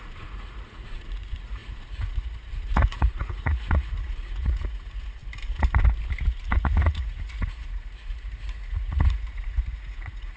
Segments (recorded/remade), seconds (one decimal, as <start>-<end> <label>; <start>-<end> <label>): 0.0-5.2 remade; 5.2-6.5 recorded; 6.5-10.4 remade